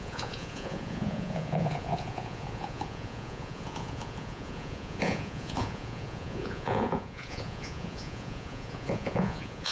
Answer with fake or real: fake